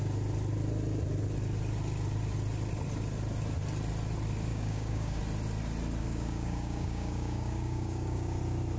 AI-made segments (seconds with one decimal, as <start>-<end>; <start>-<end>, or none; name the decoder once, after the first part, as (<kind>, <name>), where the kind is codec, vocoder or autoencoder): 4.5-5.2 (codec, DAC); 6.0-8.4